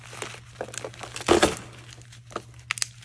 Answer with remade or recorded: recorded